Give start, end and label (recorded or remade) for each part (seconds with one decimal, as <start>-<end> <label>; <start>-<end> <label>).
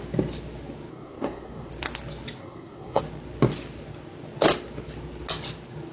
0.0-0.9 recorded; 0.9-1.7 remade; 1.7-2.4 recorded; 2.4-3.0 remade; 3.0-5.9 recorded